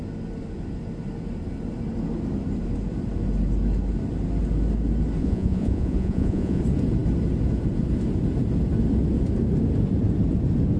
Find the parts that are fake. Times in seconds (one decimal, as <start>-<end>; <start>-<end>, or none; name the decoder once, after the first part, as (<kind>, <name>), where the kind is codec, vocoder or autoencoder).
5.2-6.6 (vocoder, Vocos)